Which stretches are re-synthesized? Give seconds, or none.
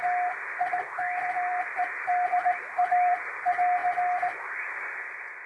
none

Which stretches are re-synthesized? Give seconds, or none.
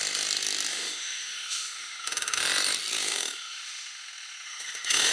0.7-2.4 (autoencoder, DAC-VAE); 3.0-5.1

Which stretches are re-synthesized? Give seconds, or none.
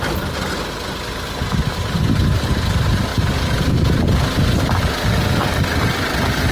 none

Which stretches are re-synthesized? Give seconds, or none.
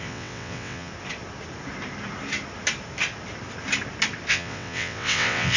0.0-0.9 (vocoder, WaveNeXt); 4.3-5.6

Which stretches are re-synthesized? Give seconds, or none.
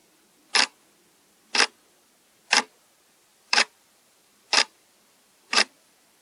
3.3-6.2 (vocoder, BigVGAN v2)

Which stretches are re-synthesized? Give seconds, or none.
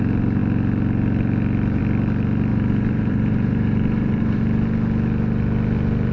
2.5-4.4 (vocoder, BigVGAN v2)